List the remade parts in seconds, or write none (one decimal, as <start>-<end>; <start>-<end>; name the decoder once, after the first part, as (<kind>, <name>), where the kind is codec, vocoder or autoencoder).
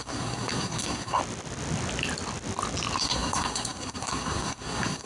0.0-1.2 (codec, SNAC); 3.0-5.1